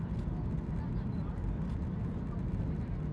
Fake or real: real